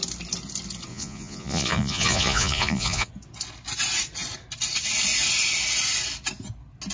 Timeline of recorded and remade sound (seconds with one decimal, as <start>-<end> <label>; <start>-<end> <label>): 0.0-0.9 recorded; 0.9-3.1 remade; 3.1-6.9 recorded